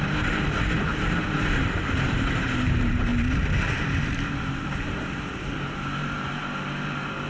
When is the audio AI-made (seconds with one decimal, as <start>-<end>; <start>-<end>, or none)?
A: 0.0-7.3